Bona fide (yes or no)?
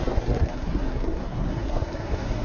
no